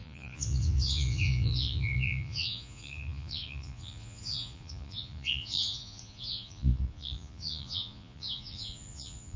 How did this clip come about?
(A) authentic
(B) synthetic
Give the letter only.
B